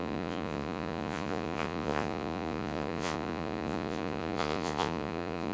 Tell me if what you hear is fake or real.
fake